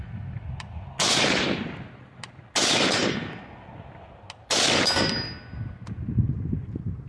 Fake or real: real